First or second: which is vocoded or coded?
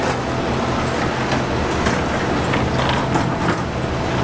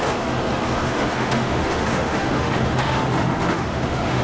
second